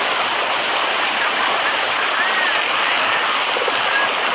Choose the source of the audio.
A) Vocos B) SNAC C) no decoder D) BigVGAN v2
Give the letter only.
C